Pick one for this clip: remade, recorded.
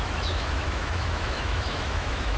remade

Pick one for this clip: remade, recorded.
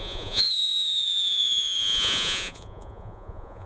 remade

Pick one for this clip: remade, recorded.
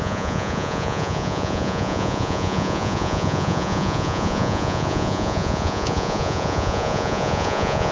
remade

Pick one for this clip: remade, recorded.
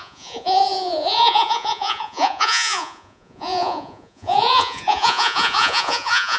remade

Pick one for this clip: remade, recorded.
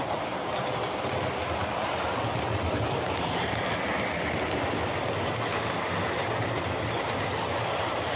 recorded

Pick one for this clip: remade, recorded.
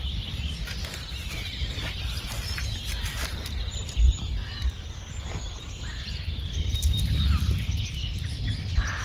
remade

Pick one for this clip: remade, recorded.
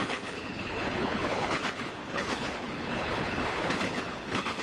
remade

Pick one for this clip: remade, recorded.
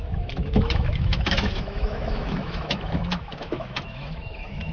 remade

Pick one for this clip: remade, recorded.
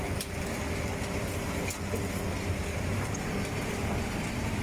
recorded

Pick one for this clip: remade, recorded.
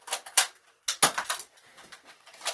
recorded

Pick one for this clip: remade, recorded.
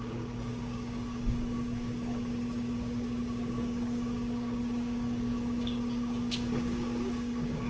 remade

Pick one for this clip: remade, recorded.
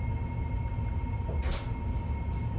recorded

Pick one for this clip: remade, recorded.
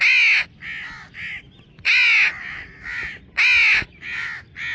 recorded